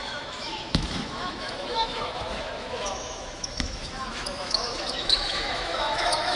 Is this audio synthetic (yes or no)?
yes